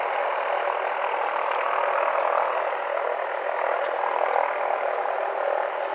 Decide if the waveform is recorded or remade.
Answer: recorded